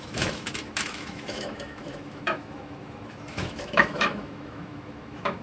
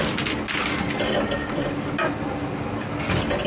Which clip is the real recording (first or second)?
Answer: second